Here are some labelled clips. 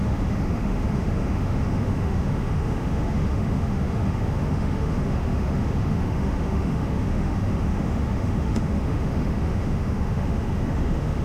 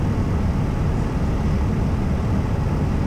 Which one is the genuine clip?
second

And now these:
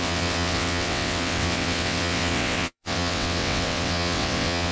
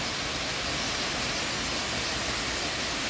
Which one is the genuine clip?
second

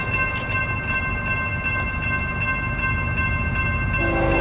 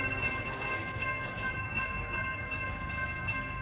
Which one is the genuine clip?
first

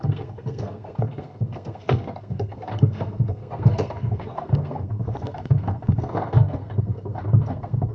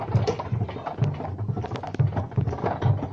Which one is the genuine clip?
second